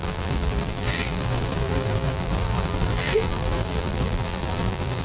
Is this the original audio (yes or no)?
no